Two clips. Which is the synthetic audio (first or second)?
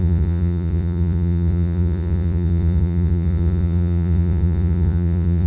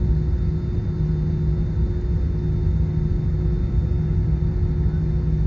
first